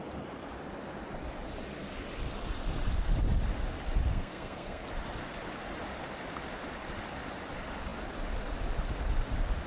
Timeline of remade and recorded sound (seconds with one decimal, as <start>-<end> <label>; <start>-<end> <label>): 0.0-4.1 recorded; 4.1-4.9 remade; 4.9-9.7 recorded